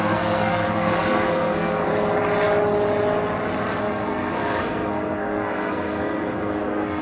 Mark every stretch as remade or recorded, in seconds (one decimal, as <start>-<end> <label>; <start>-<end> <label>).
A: 0.0-1.9 remade; 1.9-3.8 recorded; 3.8-7.0 remade